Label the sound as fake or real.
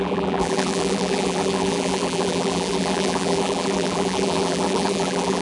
fake